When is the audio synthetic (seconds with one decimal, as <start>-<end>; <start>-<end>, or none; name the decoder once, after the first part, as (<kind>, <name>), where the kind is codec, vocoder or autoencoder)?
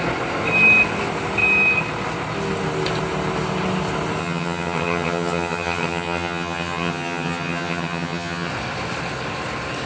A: 4.2-8.5 (vocoder, HiFi-GAN)